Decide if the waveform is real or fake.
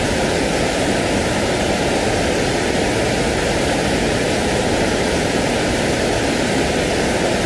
fake